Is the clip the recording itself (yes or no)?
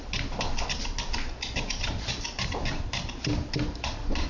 yes